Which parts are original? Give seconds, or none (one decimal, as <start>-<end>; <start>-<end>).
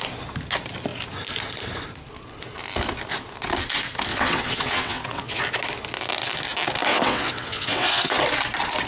0.0-4.1; 5.4-6.9; 8.2-8.9